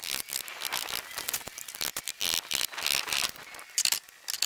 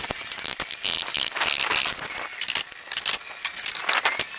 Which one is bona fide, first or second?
first